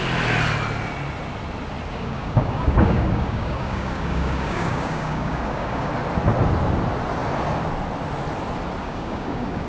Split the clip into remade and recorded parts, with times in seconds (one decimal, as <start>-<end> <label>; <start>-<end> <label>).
0.0-1.9 recorded; 1.9-5.9 remade; 5.9-8.8 recorded; 8.8-9.7 remade